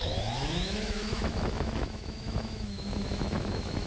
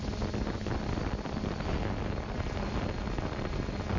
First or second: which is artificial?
first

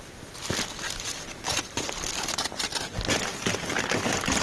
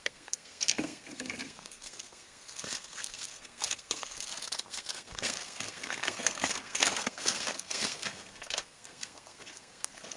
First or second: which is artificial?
second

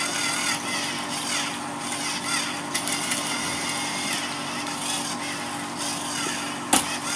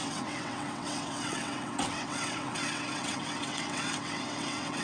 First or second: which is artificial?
second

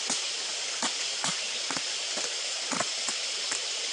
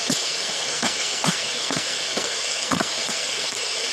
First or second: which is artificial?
second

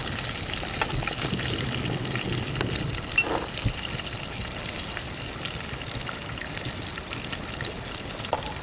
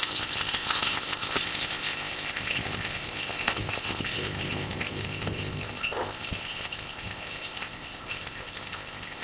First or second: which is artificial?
second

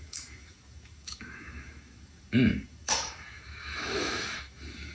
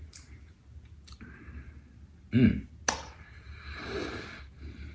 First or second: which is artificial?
first